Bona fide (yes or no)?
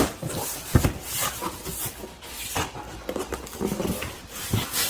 no